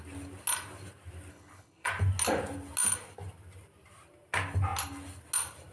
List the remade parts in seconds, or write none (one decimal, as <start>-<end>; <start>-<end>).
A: 1.3-1.9